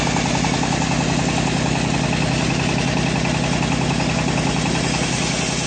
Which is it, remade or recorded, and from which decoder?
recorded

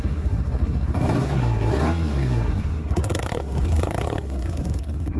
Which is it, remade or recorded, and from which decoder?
remade, codec, SNAC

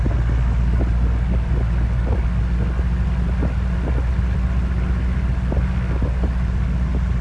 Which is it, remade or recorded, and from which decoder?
recorded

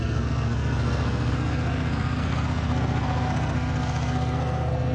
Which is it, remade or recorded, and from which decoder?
remade, codec, SNAC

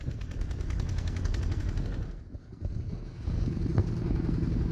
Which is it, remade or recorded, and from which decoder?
remade, codec, SNAC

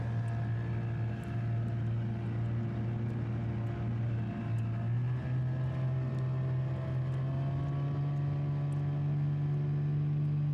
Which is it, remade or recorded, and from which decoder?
recorded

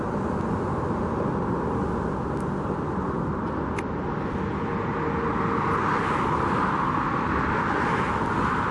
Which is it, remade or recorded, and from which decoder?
recorded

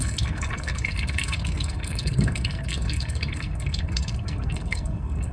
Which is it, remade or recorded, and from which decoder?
remade, codec, SNAC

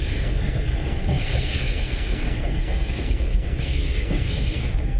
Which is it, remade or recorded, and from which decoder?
remade, codec, SNAC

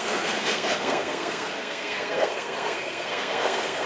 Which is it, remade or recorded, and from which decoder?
remade, codec, SNAC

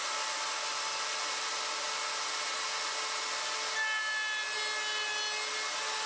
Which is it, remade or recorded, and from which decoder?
recorded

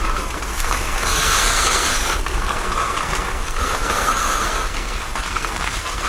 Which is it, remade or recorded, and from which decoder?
remade, codec, SNAC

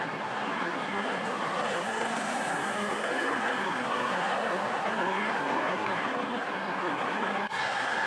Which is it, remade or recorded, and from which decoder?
remade, codec, SNAC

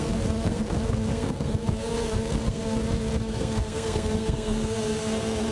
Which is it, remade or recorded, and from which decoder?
remade, codec, SNAC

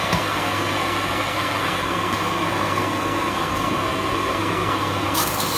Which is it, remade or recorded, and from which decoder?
remade, codec, SNAC